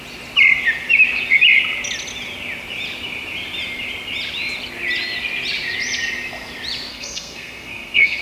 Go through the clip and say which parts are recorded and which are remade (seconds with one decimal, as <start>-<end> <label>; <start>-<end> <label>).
0.0-6.9 recorded; 6.9-8.2 remade